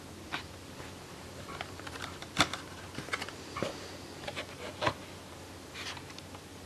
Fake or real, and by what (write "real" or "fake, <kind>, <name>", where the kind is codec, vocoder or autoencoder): real